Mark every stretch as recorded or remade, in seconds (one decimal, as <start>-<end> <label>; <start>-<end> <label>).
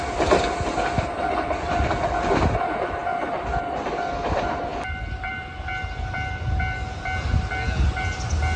0.0-8.6 recorded